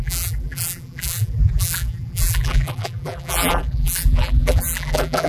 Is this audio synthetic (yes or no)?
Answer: yes